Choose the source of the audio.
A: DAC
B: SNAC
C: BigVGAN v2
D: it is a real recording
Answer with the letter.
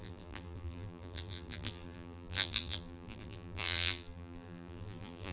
C